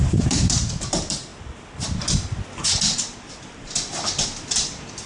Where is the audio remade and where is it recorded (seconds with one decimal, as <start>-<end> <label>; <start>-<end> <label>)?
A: 0.0-1.3 remade; 1.3-3.3 recorded; 3.3-5.1 remade

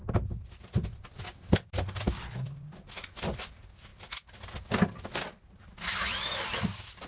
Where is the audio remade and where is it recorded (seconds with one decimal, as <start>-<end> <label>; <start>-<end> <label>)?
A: 0.0-7.1 recorded

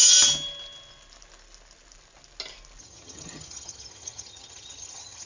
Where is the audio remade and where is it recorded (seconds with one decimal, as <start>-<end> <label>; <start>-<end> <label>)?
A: 0.0-2.8 recorded; 2.8-5.3 remade

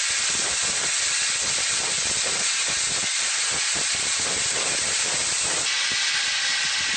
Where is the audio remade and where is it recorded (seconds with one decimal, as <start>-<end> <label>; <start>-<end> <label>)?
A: 0.0-3.0 recorded; 3.0-3.7 remade; 3.7-7.0 recorded

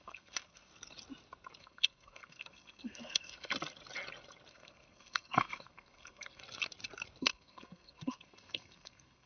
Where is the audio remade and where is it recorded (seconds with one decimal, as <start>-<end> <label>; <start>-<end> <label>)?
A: 0.0-0.7 remade; 0.7-1.6 recorded; 1.6-3.5 remade; 3.5-4.5 recorded; 4.5-6.4 remade; 6.4-7.2 recorded; 7.2-9.3 remade

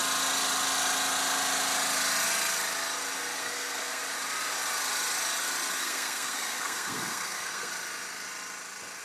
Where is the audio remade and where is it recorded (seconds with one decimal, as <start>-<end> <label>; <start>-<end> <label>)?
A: 0.0-3.4 recorded; 3.4-4.0 remade; 4.0-5.8 recorded; 5.8-7.7 remade; 7.7-9.0 recorded